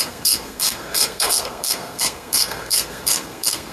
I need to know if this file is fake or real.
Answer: fake